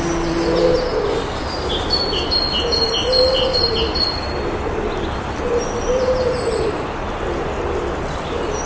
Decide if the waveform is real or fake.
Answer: real